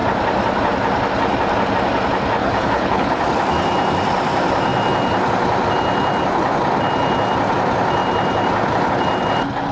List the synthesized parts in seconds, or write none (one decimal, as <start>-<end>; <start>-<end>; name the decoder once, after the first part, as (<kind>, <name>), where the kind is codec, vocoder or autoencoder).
2.4-3.2 (codec, HILCodec)